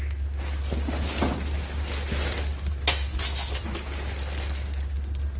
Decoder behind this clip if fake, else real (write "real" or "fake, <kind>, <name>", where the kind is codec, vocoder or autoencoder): real